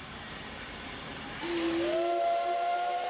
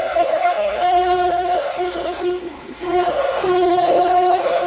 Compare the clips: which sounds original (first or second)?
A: first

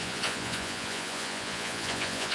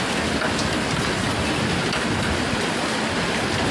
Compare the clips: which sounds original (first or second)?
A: second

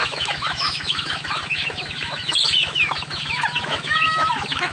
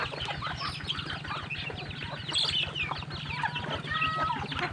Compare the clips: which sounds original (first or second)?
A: second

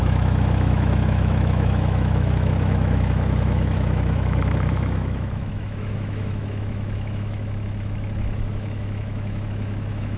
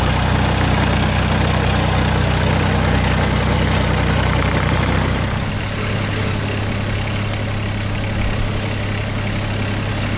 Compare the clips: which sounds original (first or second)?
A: second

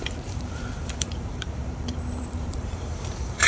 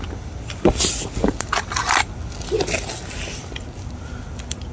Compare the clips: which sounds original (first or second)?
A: second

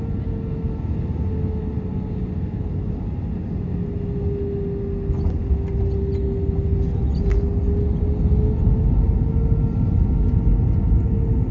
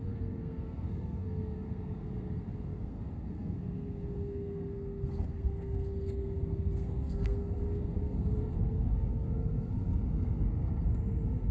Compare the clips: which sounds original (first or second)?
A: first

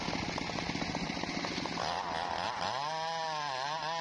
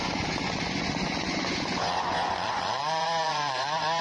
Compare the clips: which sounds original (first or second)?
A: first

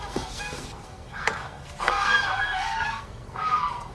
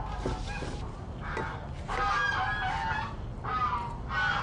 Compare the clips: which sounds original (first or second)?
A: second